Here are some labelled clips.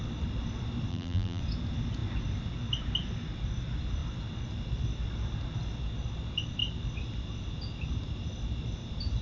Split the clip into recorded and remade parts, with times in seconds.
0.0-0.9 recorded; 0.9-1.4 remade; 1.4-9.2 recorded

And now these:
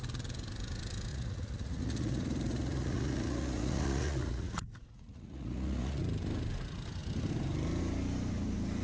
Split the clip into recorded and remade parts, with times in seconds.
0.0-1.1 recorded; 1.1-6.0 remade; 6.0-8.8 recorded